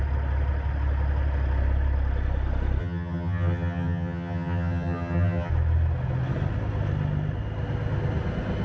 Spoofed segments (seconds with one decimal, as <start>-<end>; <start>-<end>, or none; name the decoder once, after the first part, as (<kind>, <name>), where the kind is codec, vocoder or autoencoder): 2.8-5.5 (vocoder, HiFi-GAN)